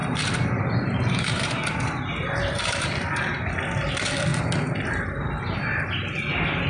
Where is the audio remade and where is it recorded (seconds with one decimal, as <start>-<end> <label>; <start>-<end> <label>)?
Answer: 0.0-3.5 remade; 3.5-4.3 recorded; 4.3-5.0 remade; 5.0-6.7 recorded

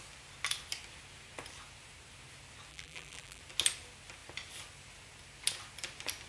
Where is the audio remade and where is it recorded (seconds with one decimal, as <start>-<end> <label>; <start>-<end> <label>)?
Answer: 0.0-2.7 recorded; 2.7-3.4 remade; 3.4-6.3 recorded